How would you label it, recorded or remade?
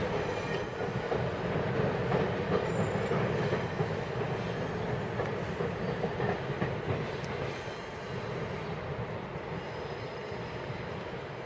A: recorded